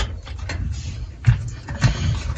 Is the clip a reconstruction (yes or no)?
no